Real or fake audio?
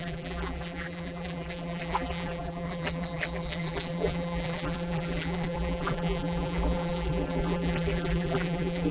fake